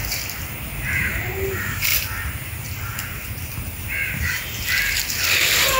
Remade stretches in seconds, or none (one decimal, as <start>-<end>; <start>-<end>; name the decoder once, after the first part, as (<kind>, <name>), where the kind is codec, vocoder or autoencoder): none